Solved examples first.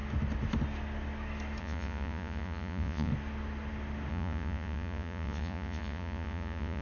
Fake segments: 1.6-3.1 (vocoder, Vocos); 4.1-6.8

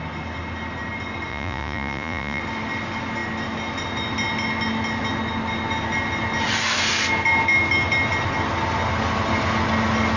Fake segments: 1.3-2.4 (vocoder, Vocos)

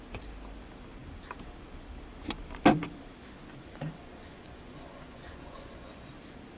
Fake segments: 3.6-6.1 (vocoder, Vocos)